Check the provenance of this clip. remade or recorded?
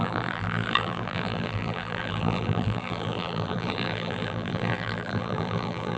remade